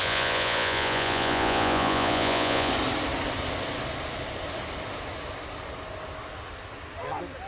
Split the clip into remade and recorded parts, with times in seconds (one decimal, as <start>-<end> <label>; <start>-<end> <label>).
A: 0.0-2.7 remade; 2.7-7.5 recorded